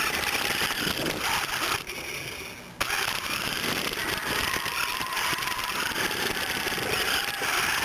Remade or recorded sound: recorded